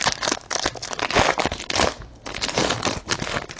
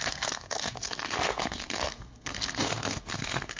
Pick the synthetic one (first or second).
second